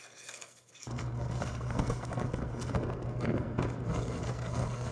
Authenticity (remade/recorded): remade